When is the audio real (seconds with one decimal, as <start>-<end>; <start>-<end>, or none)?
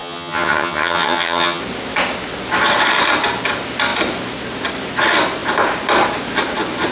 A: 1.6-6.9